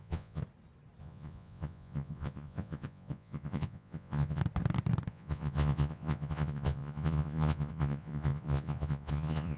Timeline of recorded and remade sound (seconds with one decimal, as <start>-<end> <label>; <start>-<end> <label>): 0.0-0.4 remade; 0.4-1.0 recorded; 1.0-4.4 remade; 4.4-5.1 recorded; 5.1-9.6 remade